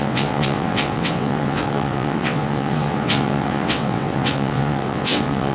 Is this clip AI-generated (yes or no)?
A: yes